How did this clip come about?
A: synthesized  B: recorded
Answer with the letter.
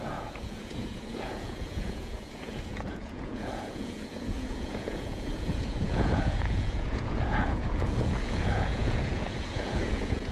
A